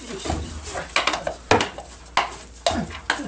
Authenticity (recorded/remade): recorded